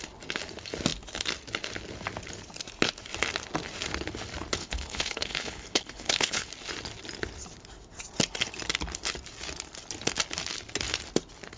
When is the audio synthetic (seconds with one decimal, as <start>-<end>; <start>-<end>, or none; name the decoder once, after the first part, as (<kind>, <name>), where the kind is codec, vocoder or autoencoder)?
4.6-6.5 (codec, HILCodec)